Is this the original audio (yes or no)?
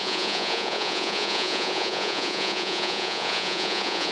no